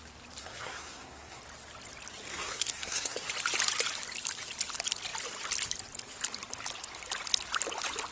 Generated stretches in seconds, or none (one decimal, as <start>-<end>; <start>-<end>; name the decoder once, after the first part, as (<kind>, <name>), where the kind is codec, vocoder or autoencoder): 0.4-1.4 (codec, SNAC); 2.3-3.3